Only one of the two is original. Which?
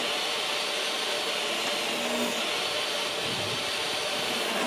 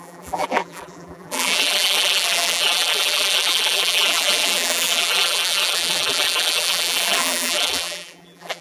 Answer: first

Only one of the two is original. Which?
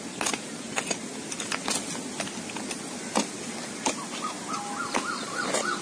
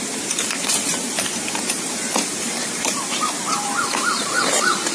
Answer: first